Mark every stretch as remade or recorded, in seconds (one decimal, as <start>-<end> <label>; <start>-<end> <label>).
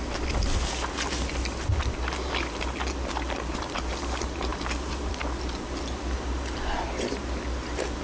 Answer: 0.0-4.5 recorded; 4.5-5.2 remade; 5.2-8.0 recorded